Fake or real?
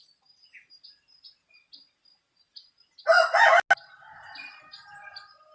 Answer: real